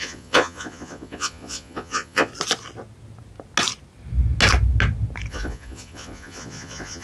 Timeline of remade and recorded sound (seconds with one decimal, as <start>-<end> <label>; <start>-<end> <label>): 0.0-2.3 remade; 2.3-5.3 recorded; 5.3-7.0 remade